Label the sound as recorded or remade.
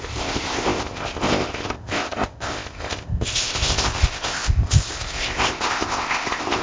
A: remade